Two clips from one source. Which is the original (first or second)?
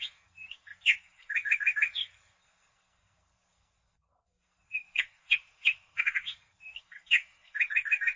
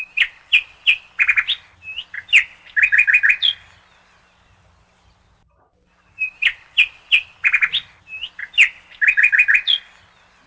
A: second